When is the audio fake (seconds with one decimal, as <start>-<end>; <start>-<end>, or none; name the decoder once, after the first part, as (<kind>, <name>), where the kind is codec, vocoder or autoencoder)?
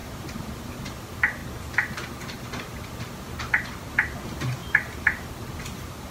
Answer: 0.0-0.7 (vocoder, BigVGAN v2); 4.6-5.3